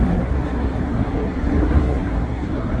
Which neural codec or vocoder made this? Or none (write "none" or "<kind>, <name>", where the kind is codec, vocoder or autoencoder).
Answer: codec, SNAC